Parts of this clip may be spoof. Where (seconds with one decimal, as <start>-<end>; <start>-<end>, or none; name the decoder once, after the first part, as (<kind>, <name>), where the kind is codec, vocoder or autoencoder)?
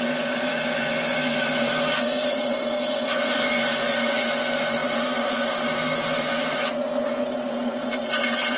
0.0-8.6 (vocoder, Vocos)